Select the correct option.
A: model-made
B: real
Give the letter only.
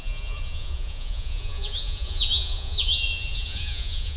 A